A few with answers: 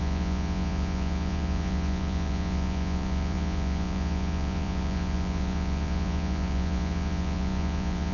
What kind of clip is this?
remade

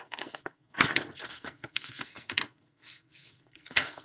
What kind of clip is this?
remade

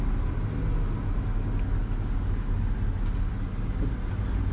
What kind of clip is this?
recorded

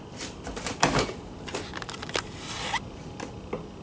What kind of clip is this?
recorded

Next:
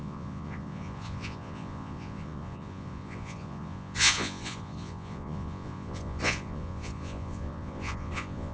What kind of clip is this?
remade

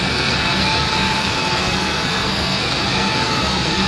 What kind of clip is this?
remade